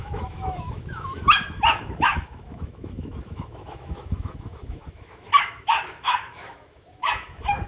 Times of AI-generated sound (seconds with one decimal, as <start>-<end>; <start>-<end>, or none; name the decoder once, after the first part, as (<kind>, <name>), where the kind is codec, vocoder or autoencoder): 0.0-7.7 (autoencoder, DAC-VAE)